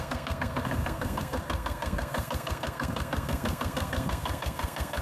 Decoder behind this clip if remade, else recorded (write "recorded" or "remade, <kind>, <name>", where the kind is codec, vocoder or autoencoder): remade, codec, SNAC